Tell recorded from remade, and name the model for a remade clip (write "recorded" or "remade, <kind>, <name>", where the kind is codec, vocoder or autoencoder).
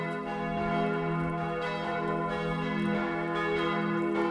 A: recorded